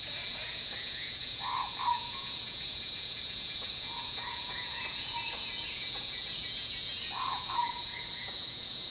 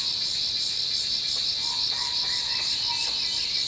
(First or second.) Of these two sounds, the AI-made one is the first